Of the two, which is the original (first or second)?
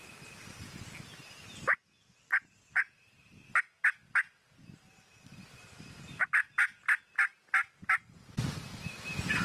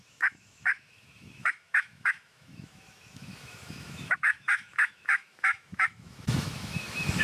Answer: first